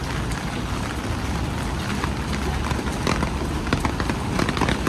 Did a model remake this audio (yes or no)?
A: no